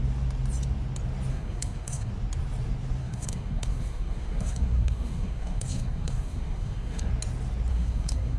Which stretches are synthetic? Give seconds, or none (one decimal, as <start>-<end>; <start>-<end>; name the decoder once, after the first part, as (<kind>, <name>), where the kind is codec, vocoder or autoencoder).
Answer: 1.3-2.1 (codec, SNAC); 3.0-7.1; 7.7-8.4